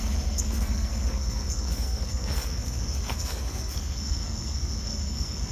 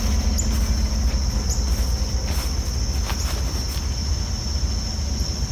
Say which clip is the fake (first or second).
first